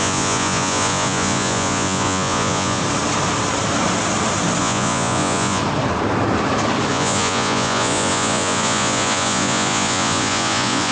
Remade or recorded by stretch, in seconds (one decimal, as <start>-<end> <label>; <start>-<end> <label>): 0.0-2.8 remade; 2.8-4.6 recorded; 4.6-5.6 remade; 5.6-6.9 recorded; 6.9-10.9 remade